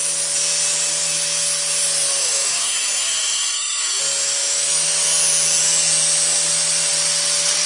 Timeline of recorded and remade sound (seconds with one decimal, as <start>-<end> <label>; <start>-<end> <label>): 0.0-2.2 recorded; 2.2-4.0 remade; 4.0-7.7 recorded